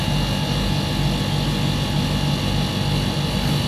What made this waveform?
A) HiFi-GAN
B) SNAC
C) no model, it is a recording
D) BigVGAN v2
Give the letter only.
C